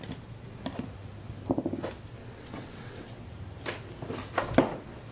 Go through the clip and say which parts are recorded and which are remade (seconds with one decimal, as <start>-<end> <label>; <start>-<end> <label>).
0.0-2.2 recorded; 2.2-3.2 remade; 3.2-5.1 recorded